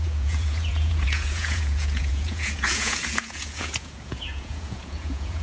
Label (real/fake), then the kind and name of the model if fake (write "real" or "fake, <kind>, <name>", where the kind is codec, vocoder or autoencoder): fake, vocoder, Vocos